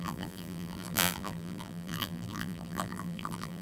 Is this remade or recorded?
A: remade